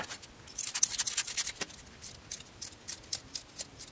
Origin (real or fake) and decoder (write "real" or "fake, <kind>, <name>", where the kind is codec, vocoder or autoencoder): real